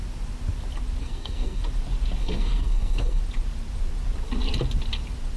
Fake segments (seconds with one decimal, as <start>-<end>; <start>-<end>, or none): 1.0-1.6; 2.2-3.2